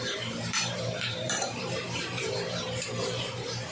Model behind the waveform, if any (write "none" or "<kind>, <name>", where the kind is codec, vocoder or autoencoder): vocoder, BigVGAN v2